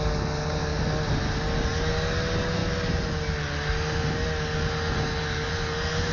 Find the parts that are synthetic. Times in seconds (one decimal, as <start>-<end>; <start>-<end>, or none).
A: none

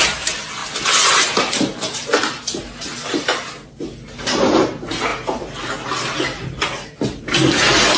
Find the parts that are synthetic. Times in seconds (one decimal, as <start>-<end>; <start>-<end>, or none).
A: 0.0-0.6; 3.7-5.1; 7.2-8.0

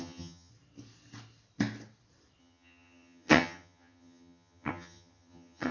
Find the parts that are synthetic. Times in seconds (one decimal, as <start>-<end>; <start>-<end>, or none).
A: 0.0-0.5; 2.4-5.7

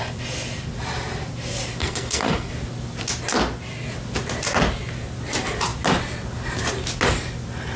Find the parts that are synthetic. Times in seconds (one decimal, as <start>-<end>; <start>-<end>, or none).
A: 1.8-2.5

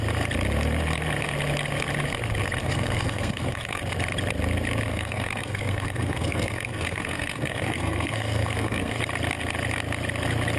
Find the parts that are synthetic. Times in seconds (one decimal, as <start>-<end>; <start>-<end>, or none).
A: 2.6-3.8; 4.9-9.0

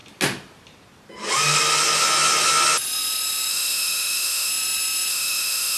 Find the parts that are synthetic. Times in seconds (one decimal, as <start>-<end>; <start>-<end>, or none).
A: 3.5-4.5; 5.1-5.8

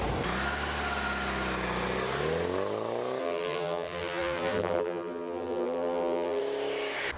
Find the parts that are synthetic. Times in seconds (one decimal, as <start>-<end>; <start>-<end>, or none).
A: 3.2-6.4